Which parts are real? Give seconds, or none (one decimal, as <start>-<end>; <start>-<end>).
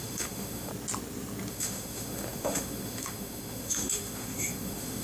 0.7-1.5